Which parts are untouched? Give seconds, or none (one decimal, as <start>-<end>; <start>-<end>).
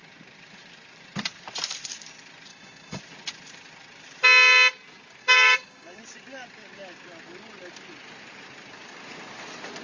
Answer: 0.0-2.5; 3.0-5.2; 6.0-9.8